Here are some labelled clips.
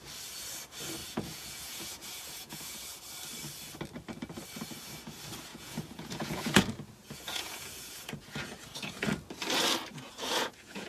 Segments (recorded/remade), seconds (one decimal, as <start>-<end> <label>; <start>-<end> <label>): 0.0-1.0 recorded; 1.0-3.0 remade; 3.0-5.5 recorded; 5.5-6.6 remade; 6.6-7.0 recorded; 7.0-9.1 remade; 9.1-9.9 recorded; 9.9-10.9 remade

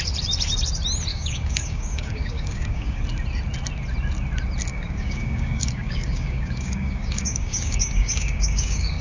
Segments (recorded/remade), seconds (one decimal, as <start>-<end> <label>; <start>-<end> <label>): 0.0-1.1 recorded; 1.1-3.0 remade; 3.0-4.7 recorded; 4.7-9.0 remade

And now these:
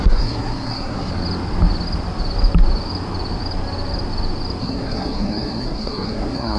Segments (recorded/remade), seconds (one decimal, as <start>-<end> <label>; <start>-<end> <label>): 0.0-1.1 remade; 1.1-4.6 recorded; 4.6-6.6 remade

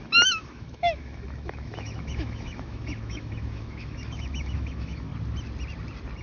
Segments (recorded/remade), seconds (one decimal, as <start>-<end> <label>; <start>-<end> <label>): 0.0-5.1 remade; 5.1-6.2 recorded